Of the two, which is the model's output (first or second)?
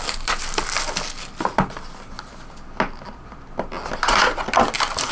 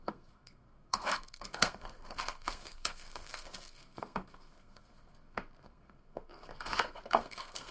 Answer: second